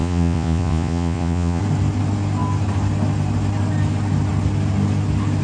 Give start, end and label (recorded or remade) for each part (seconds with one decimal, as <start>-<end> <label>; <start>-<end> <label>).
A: 0.0-1.6 remade; 1.6-5.4 recorded